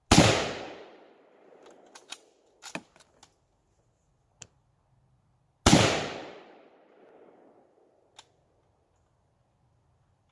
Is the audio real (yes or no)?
yes